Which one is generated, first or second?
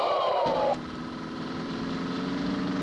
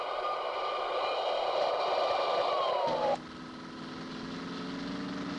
first